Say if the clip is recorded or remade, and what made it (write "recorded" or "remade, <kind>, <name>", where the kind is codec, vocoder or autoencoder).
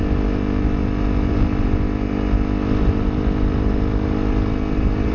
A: recorded